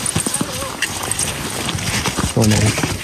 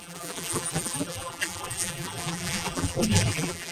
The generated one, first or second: second